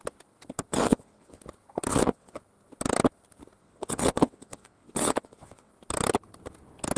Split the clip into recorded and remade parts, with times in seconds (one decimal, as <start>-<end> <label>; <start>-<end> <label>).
0.0-0.7 recorded; 0.7-1.4 remade; 1.4-1.9 recorded; 1.9-2.4 remade; 2.4-3.6 recorded; 3.6-5.7 remade; 5.7-7.0 recorded